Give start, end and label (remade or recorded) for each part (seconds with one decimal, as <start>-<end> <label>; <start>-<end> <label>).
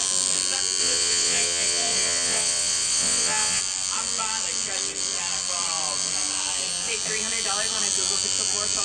0.0-0.8 recorded; 0.8-3.6 remade; 3.6-8.8 recorded